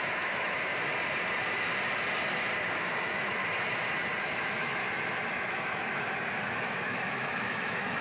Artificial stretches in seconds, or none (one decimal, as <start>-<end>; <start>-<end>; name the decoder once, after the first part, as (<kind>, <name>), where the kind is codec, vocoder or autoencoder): 0.0-0.7 (autoencoder, DAC-VAE); 2.7-3.4; 4.2-4.8; 5.3-8.0